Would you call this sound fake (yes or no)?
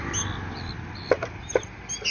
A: no